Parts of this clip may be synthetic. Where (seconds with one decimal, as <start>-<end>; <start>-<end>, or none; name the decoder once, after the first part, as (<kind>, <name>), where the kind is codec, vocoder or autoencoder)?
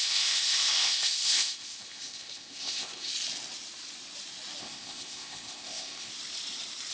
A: 0.0-3.1 (codec, ZipCodec); 4.6-6.1